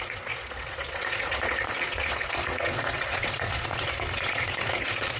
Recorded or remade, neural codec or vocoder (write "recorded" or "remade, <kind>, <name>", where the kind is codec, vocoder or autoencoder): remade, vocoder, Vocos